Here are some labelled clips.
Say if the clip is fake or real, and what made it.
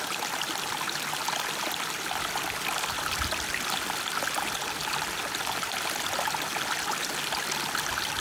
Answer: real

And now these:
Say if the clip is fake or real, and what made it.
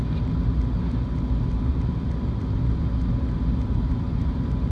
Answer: real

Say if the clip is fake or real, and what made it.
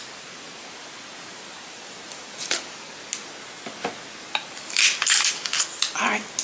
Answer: real